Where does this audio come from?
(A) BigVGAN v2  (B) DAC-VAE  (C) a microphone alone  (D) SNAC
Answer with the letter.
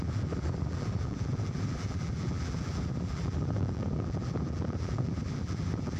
A